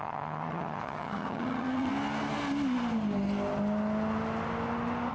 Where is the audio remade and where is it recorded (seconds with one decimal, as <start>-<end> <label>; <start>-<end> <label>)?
0.0-1.9 remade; 1.9-5.1 recorded